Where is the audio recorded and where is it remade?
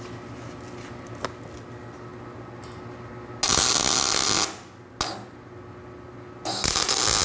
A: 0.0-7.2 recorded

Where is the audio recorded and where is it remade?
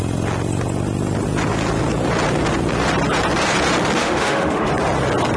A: 0.0-4.0 recorded; 4.0-4.7 remade; 4.7-5.4 recorded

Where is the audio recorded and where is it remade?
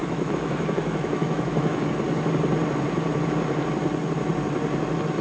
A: 0.0-1.8 remade; 1.8-5.2 recorded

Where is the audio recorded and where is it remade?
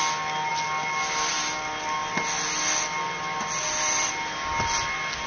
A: 0.0-5.3 recorded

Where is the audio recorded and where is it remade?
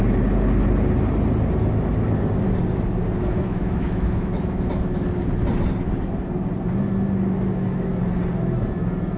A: 0.0-3.2 recorded; 3.2-4.7 remade; 4.7-9.2 recorded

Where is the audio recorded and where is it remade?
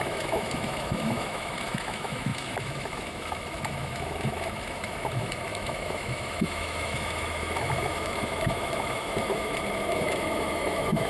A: 0.0-11.1 remade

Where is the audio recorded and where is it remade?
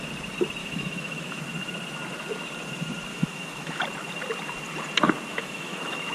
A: 0.0-0.6 recorded; 0.6-1.4 remade; 1.4-3.1 recorded; 3.1-3.8 remade; 3.8-5.3 recorded; 5.3-6.1 remade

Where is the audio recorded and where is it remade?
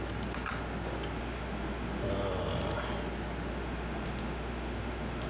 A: 0.0-1.2 recorded; 1.2-2.1 remade; 2.1-3.5 recorded; 3.5-5.3 remade